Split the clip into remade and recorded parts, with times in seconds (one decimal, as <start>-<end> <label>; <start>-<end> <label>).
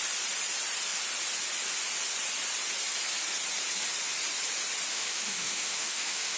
0.0-4.9 recorded; 4.9-6.4 remade